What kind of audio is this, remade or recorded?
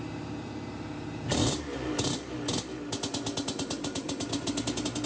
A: recorded